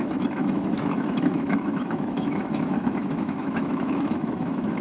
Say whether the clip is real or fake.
fake